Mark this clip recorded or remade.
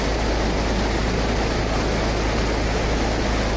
recorded